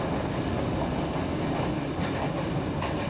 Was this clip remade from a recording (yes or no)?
no